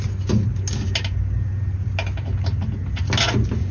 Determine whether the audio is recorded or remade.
recorded